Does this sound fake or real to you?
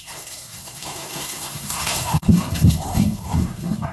fake